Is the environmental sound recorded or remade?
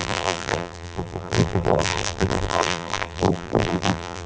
remade